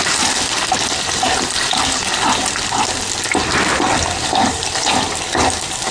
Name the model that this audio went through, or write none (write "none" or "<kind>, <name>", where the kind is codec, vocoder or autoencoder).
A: none